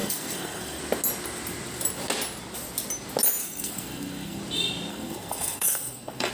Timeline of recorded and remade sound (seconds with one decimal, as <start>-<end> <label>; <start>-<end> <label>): 0.0-0.8 remade; 0.8-3.4 recorded; 3.4-4.4 remade; 4.4-4.9 recorded; 4.9-6.3 remade